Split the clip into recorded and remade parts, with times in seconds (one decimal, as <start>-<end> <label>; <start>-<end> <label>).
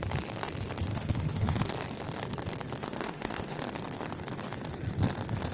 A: 0.0-0.9 recorded; 0.9-1.7 remade; 1.7-2.8 recorded; 2.8-3.6 remade; 3.6-5.5 recorded